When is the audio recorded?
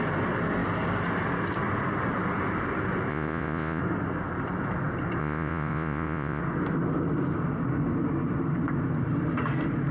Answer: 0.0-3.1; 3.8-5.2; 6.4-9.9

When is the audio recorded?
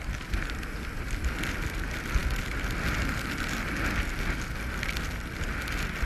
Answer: 0.0-6.1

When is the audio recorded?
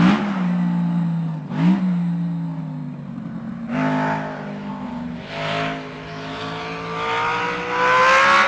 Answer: 0.0-8.5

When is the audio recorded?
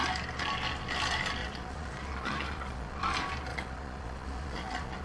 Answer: 0.0-1.4; 3.0-3.5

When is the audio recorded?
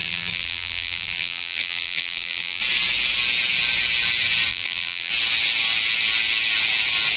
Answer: 2.6-4.5; 5.1-7.2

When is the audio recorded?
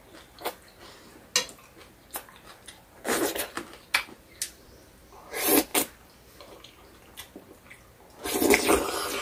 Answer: 0.0-9.2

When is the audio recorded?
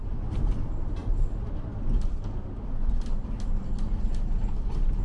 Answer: 0.0-5.0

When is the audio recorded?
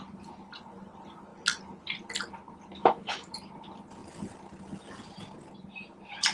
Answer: 0.0-2.8; 3.3-6.3